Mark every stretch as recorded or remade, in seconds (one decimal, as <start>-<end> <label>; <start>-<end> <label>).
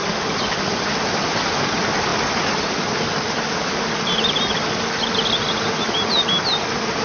0.0-7.0 recorded